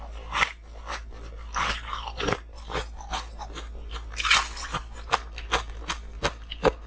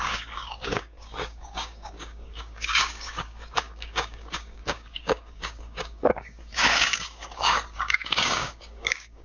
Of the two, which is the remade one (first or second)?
second